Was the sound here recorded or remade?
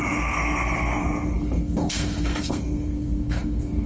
remade